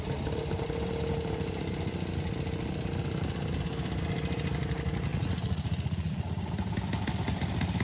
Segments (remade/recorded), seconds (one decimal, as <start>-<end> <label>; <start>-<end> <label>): 0.0-5.1 recorded; 5.1-6.5 remade; 6.5-7.8 recorded